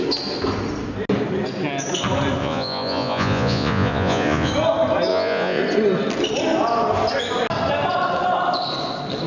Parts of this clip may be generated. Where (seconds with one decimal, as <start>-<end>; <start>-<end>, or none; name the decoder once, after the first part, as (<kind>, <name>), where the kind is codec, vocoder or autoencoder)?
2.4-4.5 (vocoder, Vocos); 5.1-5.6